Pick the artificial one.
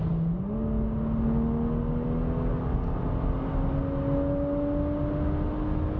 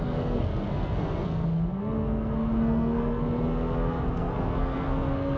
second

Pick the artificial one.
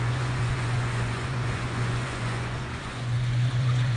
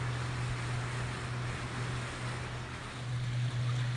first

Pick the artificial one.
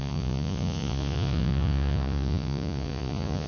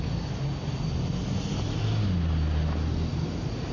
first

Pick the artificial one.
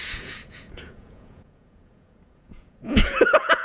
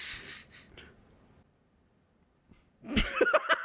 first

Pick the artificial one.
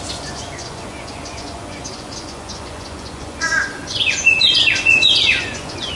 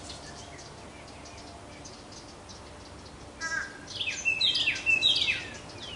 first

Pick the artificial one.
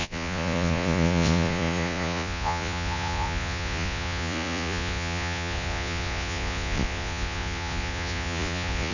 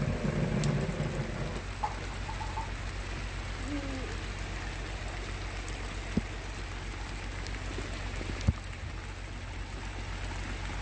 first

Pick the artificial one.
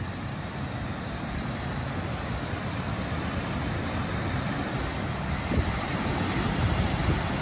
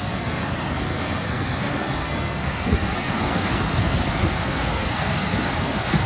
second